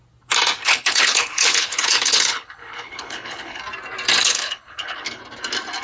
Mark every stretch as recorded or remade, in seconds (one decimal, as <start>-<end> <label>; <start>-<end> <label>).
0.0-0.6 recorded; 0.6-3.6 remade; 3.6-4.2 recorded; 4.2-5.2 remade; 5.2-5.8 recorded